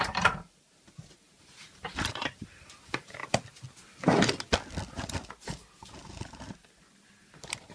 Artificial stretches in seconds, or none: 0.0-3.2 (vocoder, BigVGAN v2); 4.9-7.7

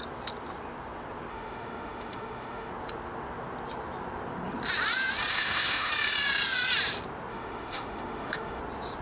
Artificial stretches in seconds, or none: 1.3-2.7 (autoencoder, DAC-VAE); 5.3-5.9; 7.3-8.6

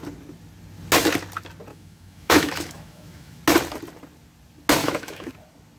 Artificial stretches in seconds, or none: 1.7-3.4 (autoencoder, DAC-VAE); 4.8-5.3

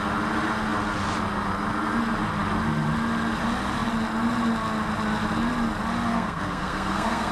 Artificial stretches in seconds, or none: 6.1-7.3 (codec, SNAC)

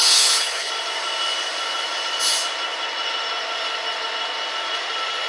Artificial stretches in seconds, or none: 0.0-0.7 (codec, HILCodec)